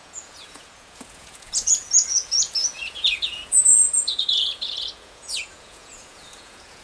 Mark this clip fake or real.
fake